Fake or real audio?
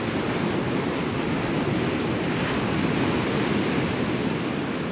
real